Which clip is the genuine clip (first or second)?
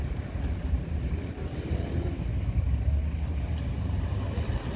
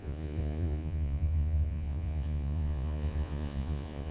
first